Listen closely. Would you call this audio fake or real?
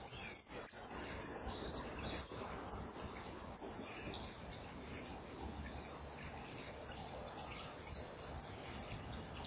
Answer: real